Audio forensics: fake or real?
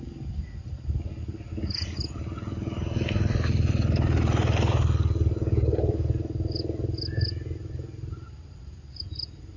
real